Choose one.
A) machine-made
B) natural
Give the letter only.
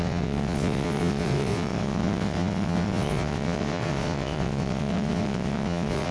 A